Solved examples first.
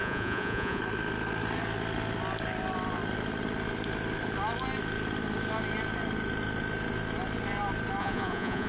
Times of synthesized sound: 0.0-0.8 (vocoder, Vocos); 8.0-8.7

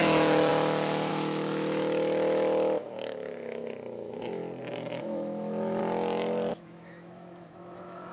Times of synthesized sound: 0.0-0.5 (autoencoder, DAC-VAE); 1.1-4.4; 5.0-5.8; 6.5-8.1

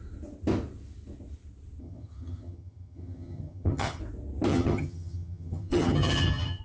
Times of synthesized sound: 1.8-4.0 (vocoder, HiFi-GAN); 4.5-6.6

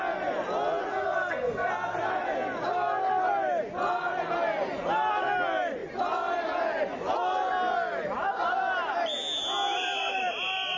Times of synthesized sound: 0.9-1.7 (codec, SNAC)